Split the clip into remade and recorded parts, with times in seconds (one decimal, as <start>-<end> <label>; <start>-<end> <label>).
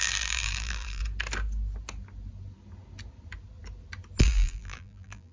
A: 0.0-1.0 remade; 1.0-4.2 recorded; 4.2-5.3 remade